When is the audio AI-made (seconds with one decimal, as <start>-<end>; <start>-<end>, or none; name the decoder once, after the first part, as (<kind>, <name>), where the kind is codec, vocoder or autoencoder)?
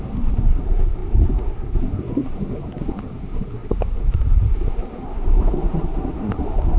0.0-6.8 (codec, SNAC)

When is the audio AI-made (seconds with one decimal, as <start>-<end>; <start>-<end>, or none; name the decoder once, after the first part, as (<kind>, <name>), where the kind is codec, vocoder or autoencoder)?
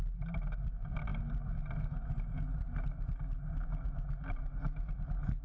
none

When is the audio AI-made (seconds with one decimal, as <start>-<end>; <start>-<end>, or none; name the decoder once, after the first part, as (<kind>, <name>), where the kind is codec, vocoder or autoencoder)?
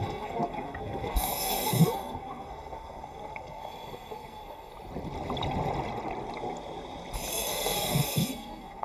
0.0-4.7 (codec, SNAC); 7.3-8.8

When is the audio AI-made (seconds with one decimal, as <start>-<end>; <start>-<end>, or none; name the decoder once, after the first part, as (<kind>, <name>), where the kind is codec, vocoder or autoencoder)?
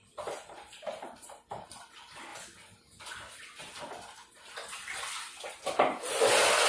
none